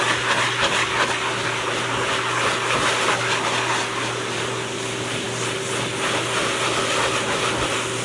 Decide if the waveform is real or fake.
real